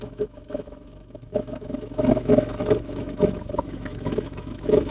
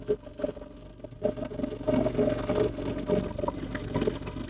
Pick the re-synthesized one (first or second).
first